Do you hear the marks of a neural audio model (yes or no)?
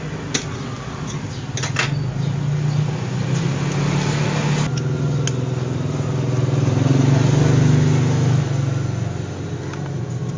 no